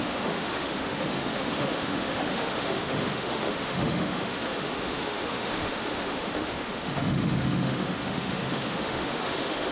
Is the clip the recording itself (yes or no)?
no